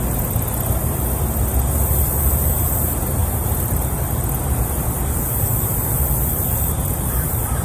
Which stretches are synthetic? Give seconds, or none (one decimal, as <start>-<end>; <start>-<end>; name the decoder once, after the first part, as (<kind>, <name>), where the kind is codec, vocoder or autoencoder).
3.2-3.9 (vocoder, BigVGAN v2)